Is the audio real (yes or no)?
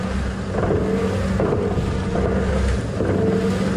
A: yes